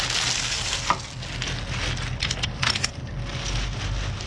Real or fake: real